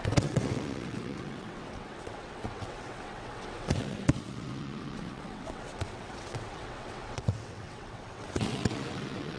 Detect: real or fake fake